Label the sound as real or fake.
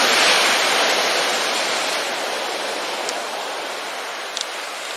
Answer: real